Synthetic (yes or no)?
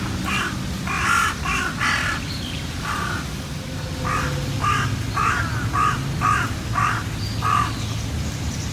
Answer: no